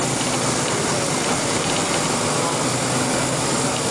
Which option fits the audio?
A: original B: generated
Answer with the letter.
A